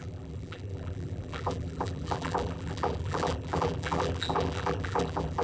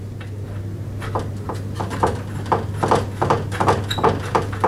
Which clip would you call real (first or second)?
second